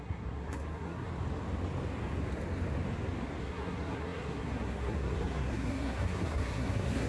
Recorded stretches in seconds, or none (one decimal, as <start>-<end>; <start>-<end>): 1.1-3.4